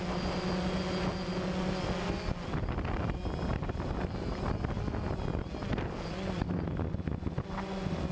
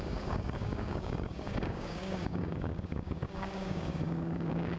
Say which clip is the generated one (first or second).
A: second